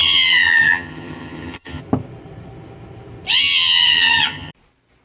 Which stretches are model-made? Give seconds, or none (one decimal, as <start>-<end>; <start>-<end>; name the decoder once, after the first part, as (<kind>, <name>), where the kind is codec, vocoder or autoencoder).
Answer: 0.0-1.8 (vocoder, HiFi-GAN); 3.3-4.5